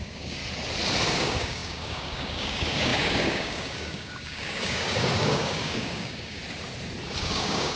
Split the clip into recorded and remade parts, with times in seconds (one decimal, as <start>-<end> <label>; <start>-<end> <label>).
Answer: 0.0-0.4 remade; 0.4-1.1 recorded; 1.1-6.4 remade; 6.4-7.2 recorded; 7.2-7.8 remade